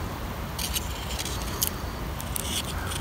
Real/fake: real